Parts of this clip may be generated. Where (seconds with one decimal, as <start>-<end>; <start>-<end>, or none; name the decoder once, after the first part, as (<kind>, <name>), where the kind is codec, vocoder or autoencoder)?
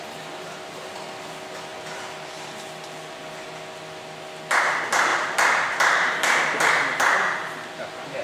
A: 1.7-3.2 (vocoder, BigVGAN v2); 5.1-6.6; 7.4-8.2